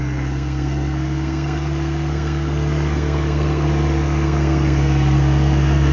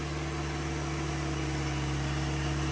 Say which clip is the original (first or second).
second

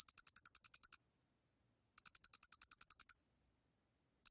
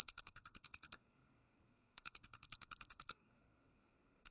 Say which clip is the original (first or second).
first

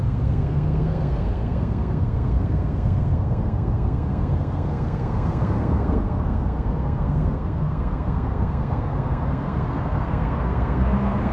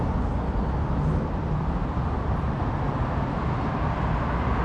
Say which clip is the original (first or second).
second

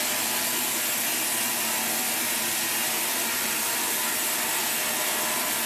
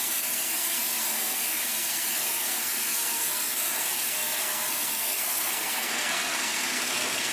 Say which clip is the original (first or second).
first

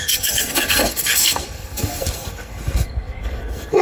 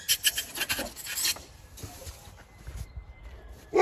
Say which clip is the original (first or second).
second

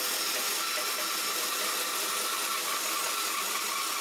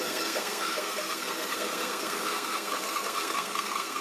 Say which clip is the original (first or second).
first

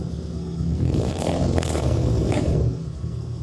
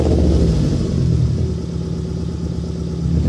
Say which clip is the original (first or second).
second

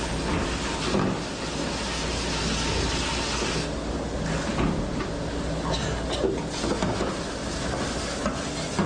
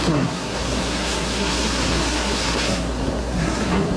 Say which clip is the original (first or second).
first